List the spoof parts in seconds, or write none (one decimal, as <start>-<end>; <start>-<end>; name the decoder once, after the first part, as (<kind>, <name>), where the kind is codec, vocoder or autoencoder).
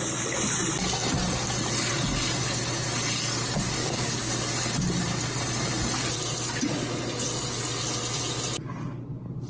3.8-4.3 (codec, DAC)